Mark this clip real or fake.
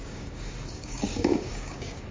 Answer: fake